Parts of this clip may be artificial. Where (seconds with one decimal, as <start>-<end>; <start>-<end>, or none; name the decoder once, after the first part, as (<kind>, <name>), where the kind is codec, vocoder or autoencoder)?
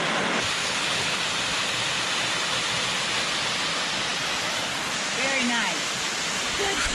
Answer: 0.6-1.2 (codec, HILCodec)